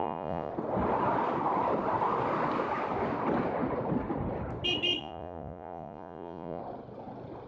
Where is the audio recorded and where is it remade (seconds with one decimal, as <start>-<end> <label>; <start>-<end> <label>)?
0.0-0.5 remade; 0.5-5.0 recorded; 5.0-6.6 remade; 6.6-7.5 recorded